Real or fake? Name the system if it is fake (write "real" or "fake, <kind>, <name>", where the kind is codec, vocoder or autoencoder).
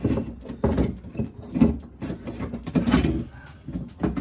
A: real